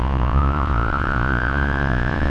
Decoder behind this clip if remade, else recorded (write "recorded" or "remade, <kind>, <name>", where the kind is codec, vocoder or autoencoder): remade, vocoder, Vocos